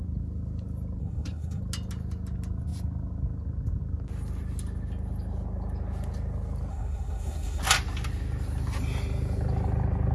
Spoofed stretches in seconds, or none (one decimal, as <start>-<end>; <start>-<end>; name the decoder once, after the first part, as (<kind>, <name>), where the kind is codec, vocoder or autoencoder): 1.0-1.6 (codec, SNAC); 6.7-7.6